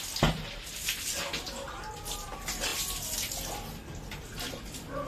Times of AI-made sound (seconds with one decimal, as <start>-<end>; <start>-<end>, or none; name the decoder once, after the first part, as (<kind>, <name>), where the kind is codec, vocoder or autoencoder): none